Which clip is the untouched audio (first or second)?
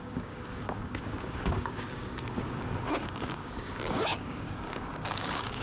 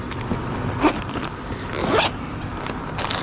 second